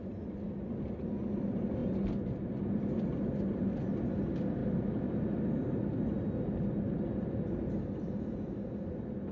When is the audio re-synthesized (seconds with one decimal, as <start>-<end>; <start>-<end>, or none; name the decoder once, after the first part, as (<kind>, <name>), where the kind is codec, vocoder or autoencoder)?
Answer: none